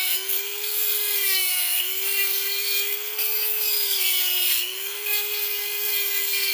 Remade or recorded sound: remade